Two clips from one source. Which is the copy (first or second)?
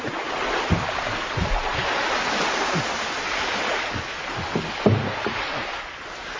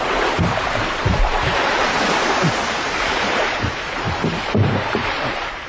second